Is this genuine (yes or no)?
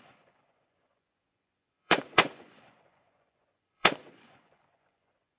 no